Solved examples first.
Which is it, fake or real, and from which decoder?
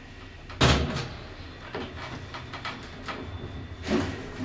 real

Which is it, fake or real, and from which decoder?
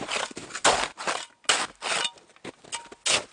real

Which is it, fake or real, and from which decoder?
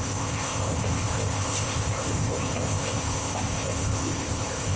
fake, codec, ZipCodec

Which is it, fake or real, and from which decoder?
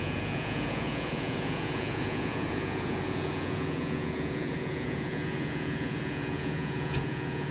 fake, vocoder, Vocos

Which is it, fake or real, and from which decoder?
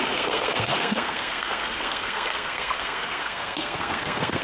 fake, codec, SNAC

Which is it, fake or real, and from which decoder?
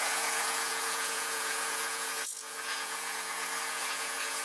fake, vocoder, Vocos